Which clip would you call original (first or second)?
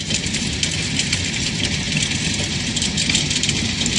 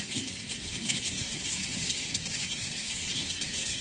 first